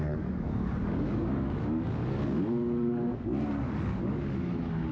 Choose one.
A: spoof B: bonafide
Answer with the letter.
A